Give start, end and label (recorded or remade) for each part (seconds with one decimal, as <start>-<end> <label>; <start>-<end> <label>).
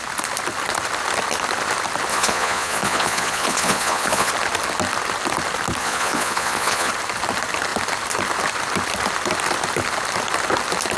0.0-2.1 recorded; 2.1-4.3 remade; 4.3-5.8 recorded; 5.8-6.9 remade; 6.9-11.0 recorded